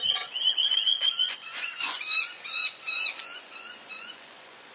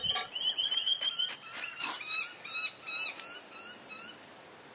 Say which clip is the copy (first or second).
first